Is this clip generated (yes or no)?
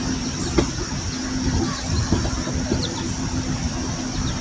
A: no